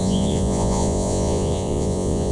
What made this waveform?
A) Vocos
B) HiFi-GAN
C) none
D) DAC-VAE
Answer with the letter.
A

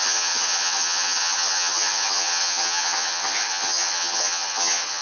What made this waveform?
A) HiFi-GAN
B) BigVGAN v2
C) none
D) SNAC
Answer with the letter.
A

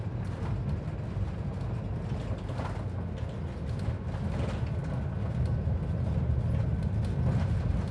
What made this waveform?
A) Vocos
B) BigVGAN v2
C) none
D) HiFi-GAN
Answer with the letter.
C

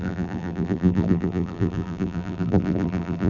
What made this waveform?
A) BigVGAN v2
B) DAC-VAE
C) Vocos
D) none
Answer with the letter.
A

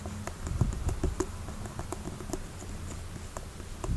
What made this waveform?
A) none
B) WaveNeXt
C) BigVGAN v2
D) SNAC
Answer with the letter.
A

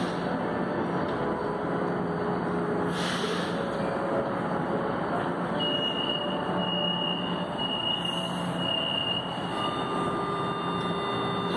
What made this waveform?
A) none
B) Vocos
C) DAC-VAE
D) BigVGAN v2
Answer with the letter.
A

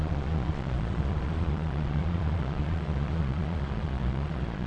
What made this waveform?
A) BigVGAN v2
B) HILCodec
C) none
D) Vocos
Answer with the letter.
D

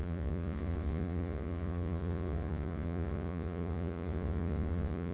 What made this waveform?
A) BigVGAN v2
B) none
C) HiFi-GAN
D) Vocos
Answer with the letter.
D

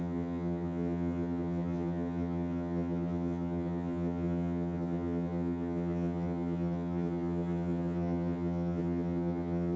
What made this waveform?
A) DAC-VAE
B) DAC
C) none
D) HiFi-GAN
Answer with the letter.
D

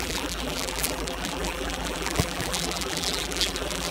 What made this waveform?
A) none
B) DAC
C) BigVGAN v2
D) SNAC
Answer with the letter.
C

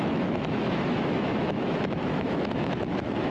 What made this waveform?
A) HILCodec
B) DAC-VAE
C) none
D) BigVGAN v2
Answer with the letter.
B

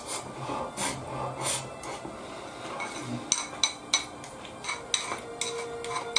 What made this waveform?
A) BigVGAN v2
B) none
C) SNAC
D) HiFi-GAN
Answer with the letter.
B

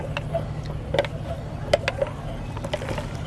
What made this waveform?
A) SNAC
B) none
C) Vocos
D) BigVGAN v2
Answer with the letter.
B